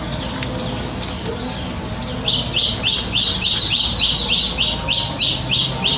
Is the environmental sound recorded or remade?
recorded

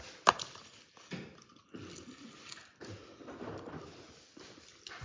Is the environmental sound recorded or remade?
recorded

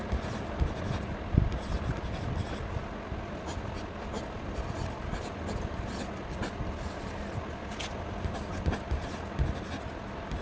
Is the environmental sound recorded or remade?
recorded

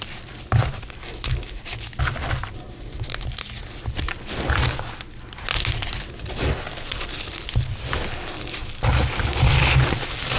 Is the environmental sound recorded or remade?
recorded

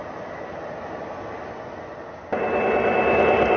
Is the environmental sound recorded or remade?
recorded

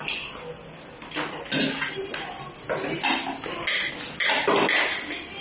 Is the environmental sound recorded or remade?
recorded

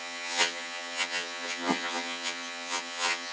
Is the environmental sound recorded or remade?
remade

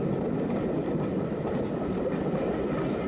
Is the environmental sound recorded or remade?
recorded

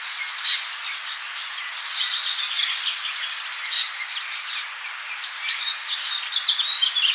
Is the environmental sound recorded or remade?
recorded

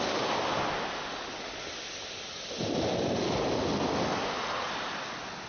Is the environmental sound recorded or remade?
recorded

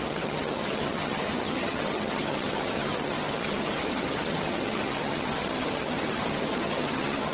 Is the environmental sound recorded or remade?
remade